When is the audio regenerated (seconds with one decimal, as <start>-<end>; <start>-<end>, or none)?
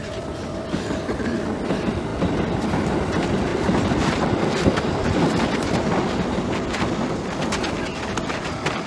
none